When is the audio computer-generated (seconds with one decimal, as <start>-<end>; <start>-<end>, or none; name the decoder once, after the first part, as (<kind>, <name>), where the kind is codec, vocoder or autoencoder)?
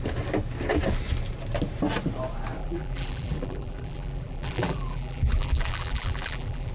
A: 2.6-6.7 (vocoder, BigVGAN v2)